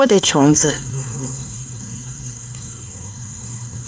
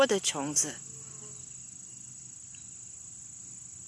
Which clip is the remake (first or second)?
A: first